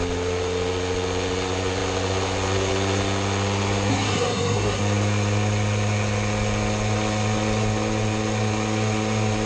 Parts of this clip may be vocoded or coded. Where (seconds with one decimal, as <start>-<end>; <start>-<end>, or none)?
3.9-4.8